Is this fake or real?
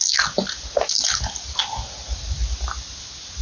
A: real